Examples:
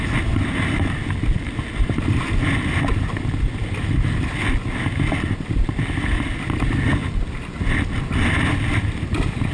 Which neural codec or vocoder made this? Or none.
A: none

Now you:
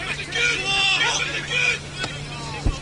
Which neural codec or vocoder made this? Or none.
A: none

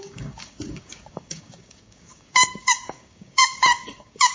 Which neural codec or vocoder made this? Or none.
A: codec, DAC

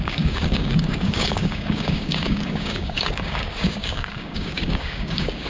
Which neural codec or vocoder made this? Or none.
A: codec, DAC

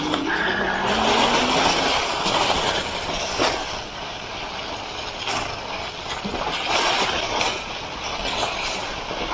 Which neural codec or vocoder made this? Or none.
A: none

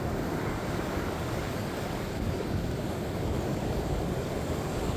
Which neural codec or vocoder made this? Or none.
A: codec, DAC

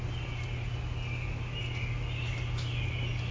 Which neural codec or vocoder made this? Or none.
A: none